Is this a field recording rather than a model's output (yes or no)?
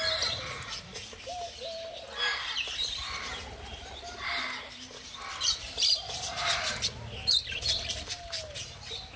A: yes